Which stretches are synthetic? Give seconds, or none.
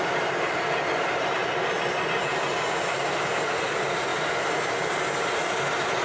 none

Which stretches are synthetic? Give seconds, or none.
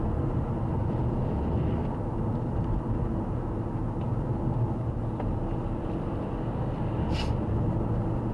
0.8-1.4 (vocoder, Vocos)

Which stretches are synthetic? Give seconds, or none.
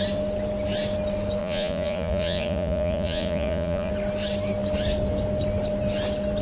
1.4-3.9 (vocoder, Vocos)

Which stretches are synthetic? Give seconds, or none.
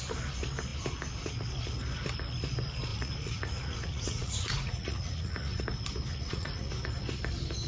2.9-5.6 (vocoder, Vocos); 6.1-6.7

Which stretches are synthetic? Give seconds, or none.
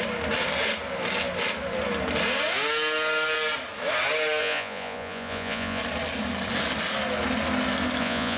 4.4-5.8 (vocoder, Vocos); 8.0-8.4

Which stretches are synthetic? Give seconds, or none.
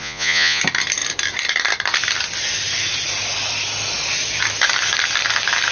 0.0-0.6 (vocoder, Vocos)